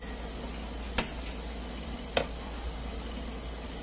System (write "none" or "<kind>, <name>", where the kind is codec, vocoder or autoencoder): none